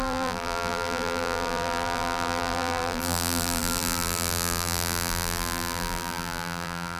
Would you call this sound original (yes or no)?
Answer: no